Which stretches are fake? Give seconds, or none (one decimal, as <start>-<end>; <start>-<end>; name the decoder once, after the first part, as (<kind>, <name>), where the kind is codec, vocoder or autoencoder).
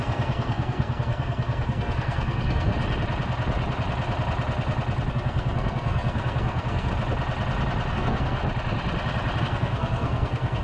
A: 0.0-2.7 (codec, SNAC); 5.1-6.9; 7.9-8.4; 9.4-10.6